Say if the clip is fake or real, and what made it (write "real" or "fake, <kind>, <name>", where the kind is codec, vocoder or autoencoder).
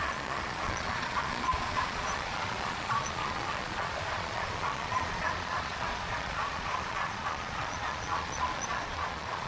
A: fake, vocoder, Vocos